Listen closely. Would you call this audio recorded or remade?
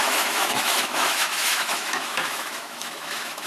remade